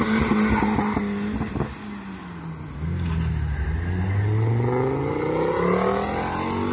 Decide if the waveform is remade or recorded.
recorded